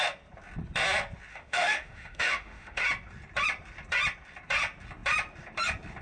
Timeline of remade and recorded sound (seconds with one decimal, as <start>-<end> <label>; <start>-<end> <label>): 0.0-1.3 recorded; 1.3-2.8 remade; 2.8-6.0 recorded